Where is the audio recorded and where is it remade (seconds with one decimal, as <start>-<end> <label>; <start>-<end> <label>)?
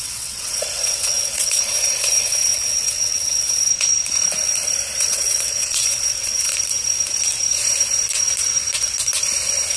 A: 0.0-3.7 remade; 3.7-5.0 recorded; 5.0-6.5 remade; 6.5-9.8 recorded